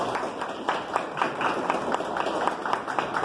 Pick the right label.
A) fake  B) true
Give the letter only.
B